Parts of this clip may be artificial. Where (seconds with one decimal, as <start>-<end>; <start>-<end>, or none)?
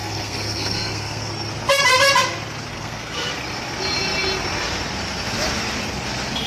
0.0-1.3; 2.7-3.3